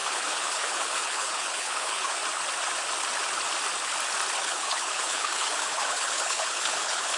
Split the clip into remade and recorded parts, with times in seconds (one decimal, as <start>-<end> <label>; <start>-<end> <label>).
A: 0.0-2.2 remade; 2.2-4.4 recorded; 4.4-7.2 remade